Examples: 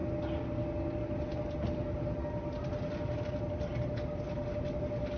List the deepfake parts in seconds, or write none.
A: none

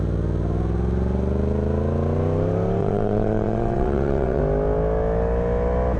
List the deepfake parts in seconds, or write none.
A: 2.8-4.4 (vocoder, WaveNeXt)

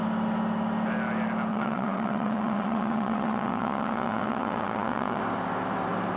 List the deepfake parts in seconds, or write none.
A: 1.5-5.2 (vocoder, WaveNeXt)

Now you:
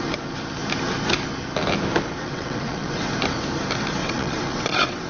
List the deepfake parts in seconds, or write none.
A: 2.2-3.1 (vocoder, WaveNeXt); 4.0-5.1

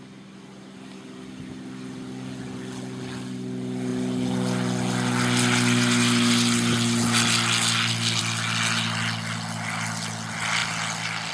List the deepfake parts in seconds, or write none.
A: none